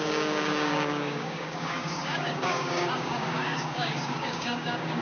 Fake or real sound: fake